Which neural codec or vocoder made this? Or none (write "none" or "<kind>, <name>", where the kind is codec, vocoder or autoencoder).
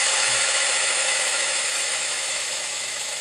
autoencoder, DAC-VAE